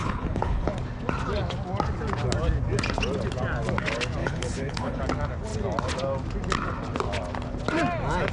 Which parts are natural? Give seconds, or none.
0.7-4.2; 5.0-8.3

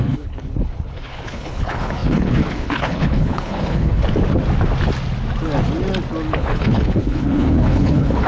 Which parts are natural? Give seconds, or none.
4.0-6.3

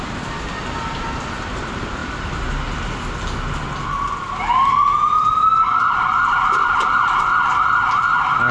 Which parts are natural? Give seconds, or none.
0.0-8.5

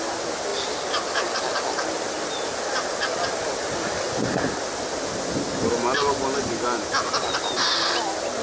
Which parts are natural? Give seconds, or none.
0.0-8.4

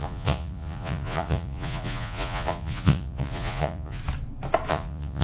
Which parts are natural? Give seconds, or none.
4.0-4.7

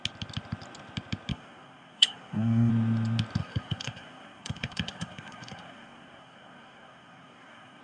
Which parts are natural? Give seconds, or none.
0.0-1.3; 2.7-3.4

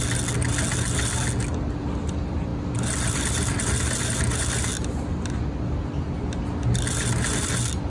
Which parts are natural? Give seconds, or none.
0.0-7.9

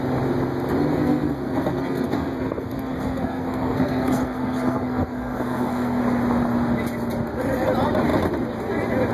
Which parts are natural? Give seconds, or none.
0.0-0.9; 6.0-9.1